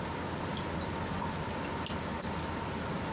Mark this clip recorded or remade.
recorded